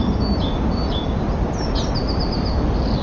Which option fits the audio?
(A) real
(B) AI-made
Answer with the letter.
A